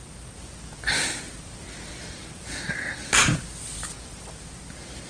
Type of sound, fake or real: real